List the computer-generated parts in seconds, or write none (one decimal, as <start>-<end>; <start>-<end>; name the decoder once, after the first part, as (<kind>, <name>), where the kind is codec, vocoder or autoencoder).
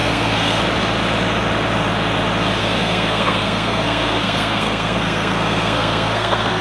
0.0-0.6 (codec, SNAC); 2.6-6.6